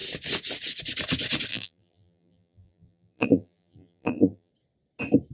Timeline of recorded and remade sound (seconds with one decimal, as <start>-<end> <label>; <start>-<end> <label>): 0.0-1.5 recorded; 1.5-4.5 remade; 4.5-5.3 recorded

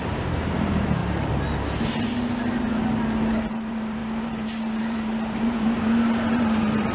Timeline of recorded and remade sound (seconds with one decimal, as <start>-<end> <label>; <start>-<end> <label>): 0.0-1.0 remade; 1.0-3.5 recorded; 3.5-6.9 remade

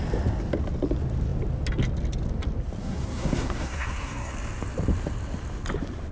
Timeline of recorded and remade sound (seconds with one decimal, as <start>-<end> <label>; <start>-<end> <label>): 0.0-2.8 recorded; 2.8-4.3 remade; 4.3-6.1 recorded

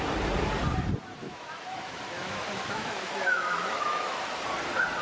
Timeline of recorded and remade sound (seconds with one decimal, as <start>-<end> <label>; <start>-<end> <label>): 0.0-1.2 recorded; 1.2-4.2 remade; 4.2-5.0 recorded

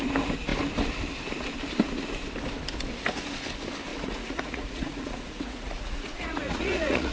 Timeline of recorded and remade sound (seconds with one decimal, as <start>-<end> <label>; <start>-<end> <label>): 0.0-3.9 recorded; 3.9-7.1 remade

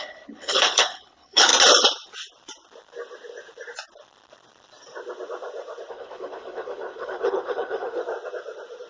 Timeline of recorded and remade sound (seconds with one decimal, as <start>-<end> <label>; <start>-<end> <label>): 0.0-1.5 remade; 1.5-5.9 recorded; 5.9-8.0 remade; 8.0-8.9 recorded

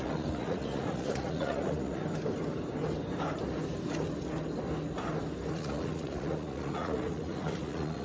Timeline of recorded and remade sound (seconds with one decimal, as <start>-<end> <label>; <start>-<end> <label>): 0.0-2.0 remade; 2.0-5.5 recorded; 5.5-8.0 remade

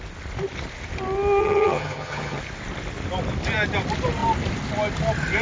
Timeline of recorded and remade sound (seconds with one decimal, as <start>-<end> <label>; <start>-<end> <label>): 0.0-1.4 recorded; 1.4-2.4 remade; 2.4-5.4 recorded